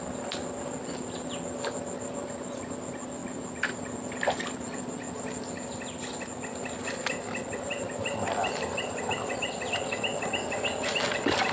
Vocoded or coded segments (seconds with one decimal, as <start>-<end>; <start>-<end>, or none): none